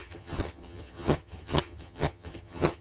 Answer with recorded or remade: remade